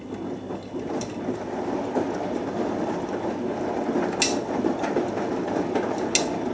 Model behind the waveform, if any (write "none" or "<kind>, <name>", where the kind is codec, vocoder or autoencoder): none